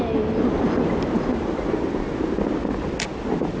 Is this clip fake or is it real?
real